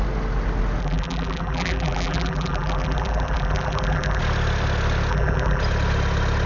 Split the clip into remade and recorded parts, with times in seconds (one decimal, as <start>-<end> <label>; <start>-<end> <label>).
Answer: 0.0-0.8 recorded; 0.8-4.2 remade; 4.2-5.1 recorded; 5.1-5.6 remade; 5.6-6.5 recorded